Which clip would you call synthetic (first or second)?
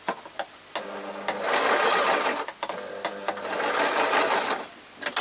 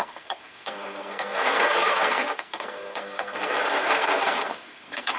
second